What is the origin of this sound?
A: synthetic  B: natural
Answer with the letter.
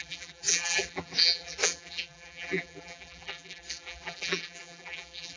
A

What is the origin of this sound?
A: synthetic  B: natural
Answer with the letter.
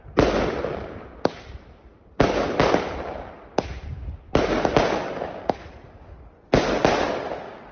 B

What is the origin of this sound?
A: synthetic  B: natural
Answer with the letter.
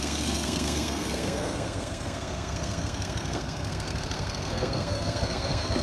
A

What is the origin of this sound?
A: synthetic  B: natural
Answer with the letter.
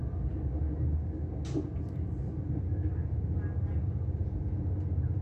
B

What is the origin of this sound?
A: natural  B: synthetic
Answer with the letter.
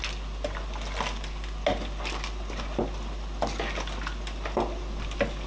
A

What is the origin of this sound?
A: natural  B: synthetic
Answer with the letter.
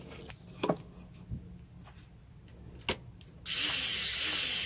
A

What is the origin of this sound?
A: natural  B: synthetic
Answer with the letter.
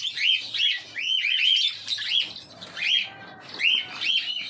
A